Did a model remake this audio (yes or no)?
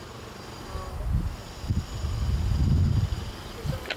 no